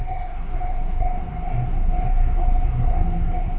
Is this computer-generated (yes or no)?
yes